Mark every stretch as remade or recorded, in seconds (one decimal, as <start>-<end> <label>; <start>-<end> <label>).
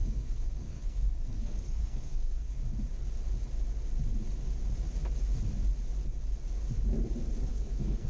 0.0-2.6 remade; 2.6-7.5 recorded; 7.5-8.1 remade